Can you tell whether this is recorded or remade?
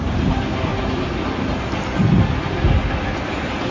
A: recorded